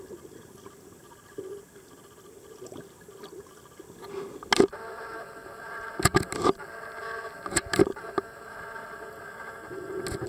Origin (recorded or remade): recorded